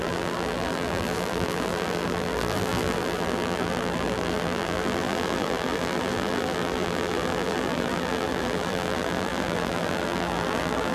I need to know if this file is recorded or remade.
remade